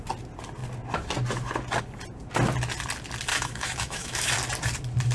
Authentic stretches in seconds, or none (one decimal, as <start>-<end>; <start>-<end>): 0.0-3.3; 4.3-5.1